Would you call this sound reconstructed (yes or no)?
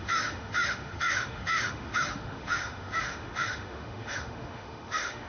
yes